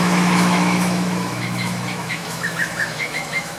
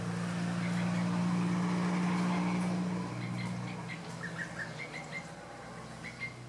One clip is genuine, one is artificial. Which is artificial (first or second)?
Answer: first